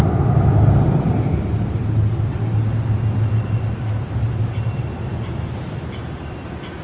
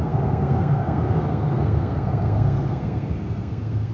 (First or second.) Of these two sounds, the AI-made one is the second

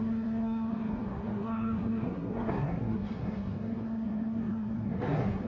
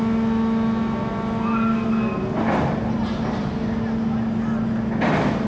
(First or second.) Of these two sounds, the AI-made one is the first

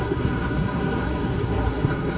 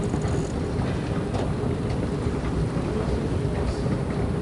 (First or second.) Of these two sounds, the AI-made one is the first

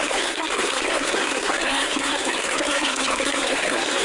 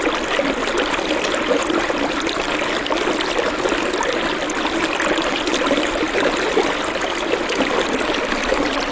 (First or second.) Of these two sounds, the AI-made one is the first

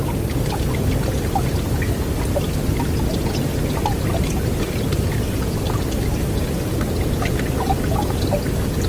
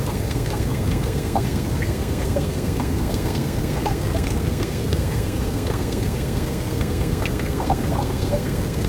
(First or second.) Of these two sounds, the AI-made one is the second